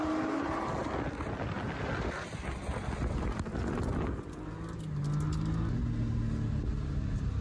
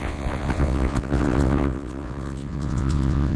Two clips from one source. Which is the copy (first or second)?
second